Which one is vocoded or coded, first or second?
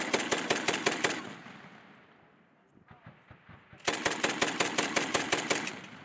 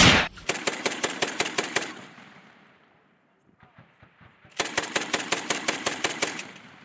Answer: second